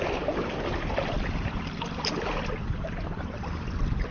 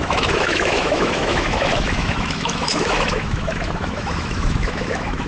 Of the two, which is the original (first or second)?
first